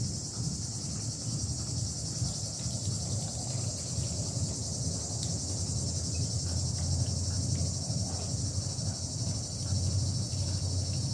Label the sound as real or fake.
real